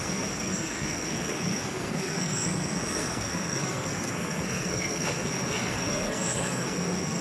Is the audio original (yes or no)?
no